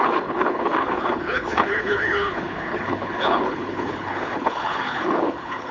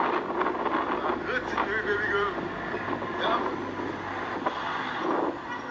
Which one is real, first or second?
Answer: second